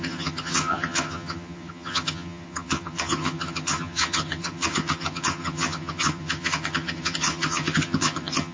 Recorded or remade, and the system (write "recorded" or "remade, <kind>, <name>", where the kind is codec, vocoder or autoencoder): remade, vocoder, HiFi-GAN